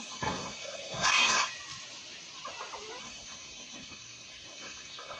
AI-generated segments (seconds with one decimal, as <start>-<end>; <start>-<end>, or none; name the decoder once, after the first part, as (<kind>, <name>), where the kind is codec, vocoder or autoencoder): 0.0-1.5 (codec, SNAC); 3.0-5.2